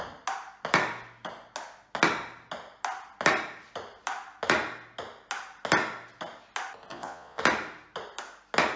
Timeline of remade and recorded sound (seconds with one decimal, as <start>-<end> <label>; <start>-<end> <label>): 0.0-6.9 recorded; 6.9-7.4 remade; 7.4-8.8 recorded